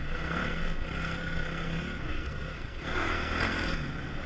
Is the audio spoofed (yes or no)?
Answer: yes